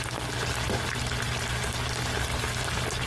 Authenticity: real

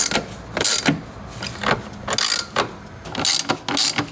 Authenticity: real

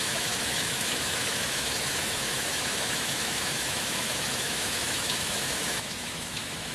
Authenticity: fake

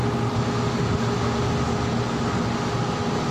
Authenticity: real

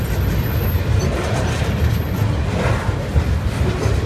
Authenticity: real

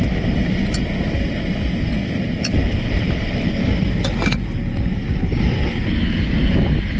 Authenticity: real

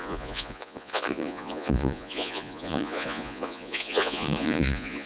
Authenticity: fake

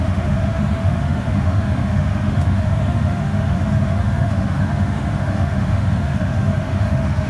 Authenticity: fake